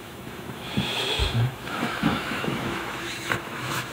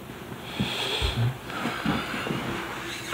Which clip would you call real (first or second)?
second